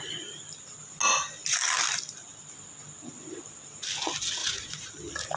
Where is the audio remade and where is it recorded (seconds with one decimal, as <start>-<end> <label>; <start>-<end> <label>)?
0.0-4.4 recorded; 4.4-4.9 remade; 4.9-5.4 recorded